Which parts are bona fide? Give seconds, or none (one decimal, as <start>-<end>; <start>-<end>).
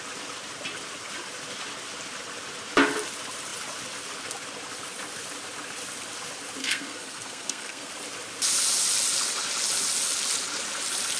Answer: 0.0-6.6; 7.9-11.2